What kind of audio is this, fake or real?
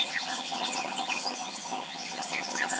fake